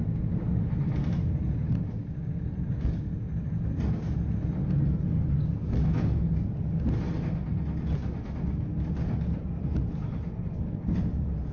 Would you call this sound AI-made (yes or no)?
no